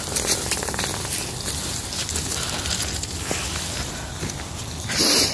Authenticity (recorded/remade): recorded